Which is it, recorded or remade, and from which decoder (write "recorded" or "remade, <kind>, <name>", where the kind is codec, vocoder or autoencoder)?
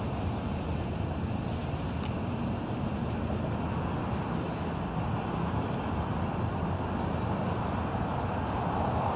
recorded